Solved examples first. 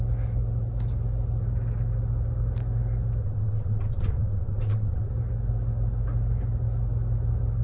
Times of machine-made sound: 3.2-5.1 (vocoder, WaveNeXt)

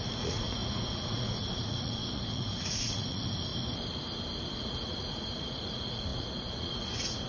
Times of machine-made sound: 0.0-3.5 (vocoder, Vocos); 4.6-7.3

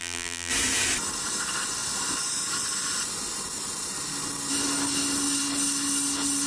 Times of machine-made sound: 0.0-0.5 (vocoder, BigVGAN v2)

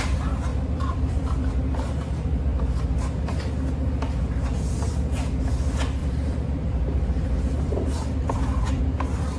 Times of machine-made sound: 0.5-1.5 (vocoder, BigVGAN v2); 6.0-8.8

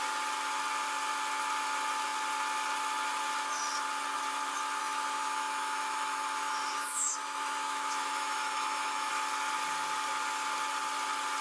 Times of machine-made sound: 4.8-9.1 (autoencoder, DAC-VAE)

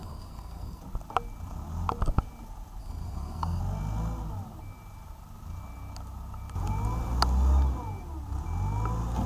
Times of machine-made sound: 0.0-0.8 (codec, SNAC); 2.8-3.6

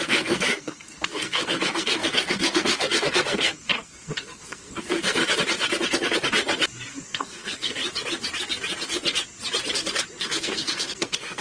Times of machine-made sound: 0.0-5.2 (codec, SNAC); 6.9-7.8; 10.2-11.4